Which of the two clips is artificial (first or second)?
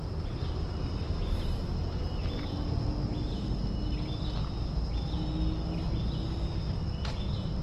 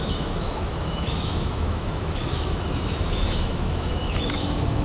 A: second